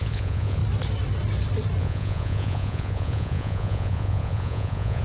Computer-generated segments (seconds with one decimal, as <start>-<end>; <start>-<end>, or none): 0.0-0.6; 1.8-5.0

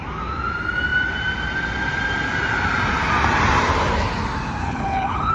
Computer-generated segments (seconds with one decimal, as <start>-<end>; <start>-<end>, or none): 4.6-5.3

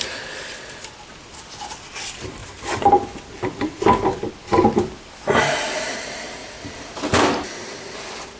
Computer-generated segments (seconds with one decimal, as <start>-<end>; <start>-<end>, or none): 2.4-4.3; 6.4-7.0

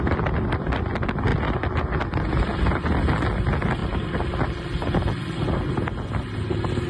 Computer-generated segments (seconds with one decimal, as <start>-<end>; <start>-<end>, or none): none

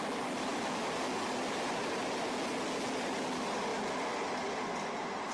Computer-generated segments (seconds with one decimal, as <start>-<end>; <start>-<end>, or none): none

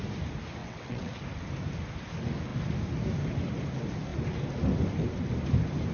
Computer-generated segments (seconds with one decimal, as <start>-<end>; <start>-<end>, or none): 0.6-1.1